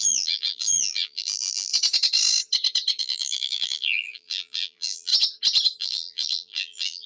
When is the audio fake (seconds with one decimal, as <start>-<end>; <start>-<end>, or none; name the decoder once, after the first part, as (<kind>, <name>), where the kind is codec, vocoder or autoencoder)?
0.0-1.7 (vocoder, BigVGAN v2); 3.0-5.1; 5.8-7.1